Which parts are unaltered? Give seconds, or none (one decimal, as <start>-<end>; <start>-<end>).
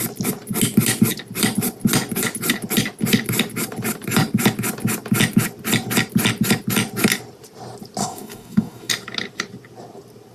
0.0-8.0; 8.9-10.3